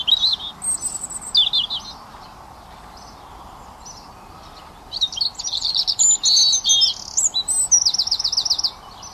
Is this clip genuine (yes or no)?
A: yes